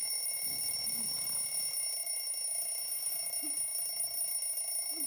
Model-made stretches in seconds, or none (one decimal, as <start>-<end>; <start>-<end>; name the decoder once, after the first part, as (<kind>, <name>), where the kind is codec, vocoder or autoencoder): none